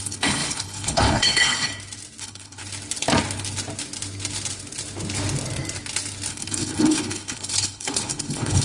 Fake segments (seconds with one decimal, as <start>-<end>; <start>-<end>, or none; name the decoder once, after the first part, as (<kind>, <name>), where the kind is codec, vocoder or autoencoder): 0.0-1.7 (codec, HILCodec); 2.2-2.6; 6.3-8.6